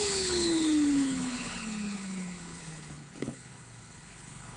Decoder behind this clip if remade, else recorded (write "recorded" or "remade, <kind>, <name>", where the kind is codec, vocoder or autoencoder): remade, codec, HILCodec